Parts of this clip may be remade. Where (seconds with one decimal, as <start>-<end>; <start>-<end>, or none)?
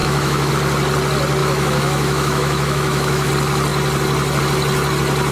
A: 0.0-0.5; 1.4-3.3